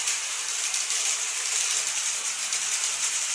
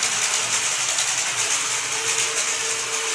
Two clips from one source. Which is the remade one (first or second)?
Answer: first